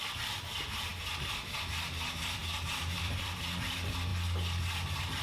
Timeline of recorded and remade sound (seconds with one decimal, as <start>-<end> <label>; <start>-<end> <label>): 0.0-0.9 remade; 0.9-1.7 recorded; 1.7-4.1 remade; 4.1-5.2 recorded